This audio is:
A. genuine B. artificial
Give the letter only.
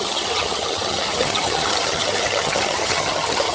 B